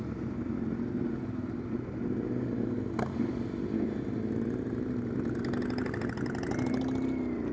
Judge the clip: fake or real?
real